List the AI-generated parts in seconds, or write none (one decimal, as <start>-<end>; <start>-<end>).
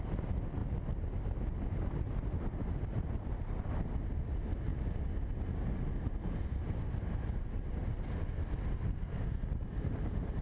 none